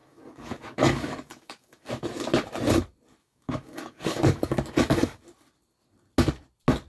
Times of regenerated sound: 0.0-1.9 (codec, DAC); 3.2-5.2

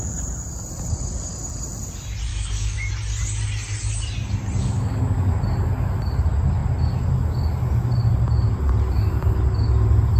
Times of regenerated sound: 2.3-2.9 (codec, DAC); 4.6-5.3